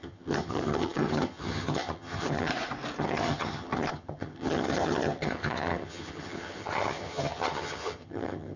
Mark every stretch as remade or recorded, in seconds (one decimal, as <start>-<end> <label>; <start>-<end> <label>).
0.0-2.5 remade; 2.5-3.0 recorded; 3.0-8.6 remade